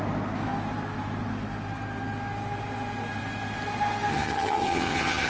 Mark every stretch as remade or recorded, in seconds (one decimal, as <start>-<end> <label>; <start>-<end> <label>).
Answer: 0.0-4.1 recorded; 4.1-5.3 remade